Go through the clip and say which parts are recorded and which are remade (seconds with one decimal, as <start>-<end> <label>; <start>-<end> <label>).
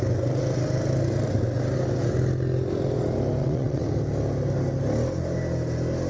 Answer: 0.0-3.4 recorded; 3.4-3.9 remade; 3.9-6.1 recorded